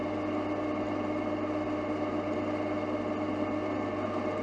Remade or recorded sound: recorded